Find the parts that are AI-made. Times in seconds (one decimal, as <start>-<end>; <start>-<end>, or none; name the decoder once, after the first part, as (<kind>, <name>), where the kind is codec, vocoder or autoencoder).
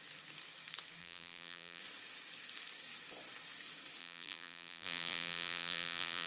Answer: 1.0-1.8 (vocoder, BigVGAN v2); 4.0-6.3